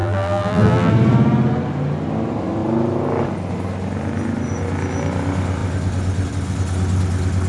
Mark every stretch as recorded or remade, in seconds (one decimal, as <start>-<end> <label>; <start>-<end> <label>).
0.0-0.9 remade; 0.9-7.5 recorded